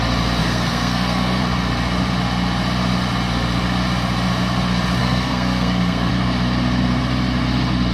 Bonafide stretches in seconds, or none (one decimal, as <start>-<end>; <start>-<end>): 0.0-0.4; 1.4-5.0; 6.1-7.9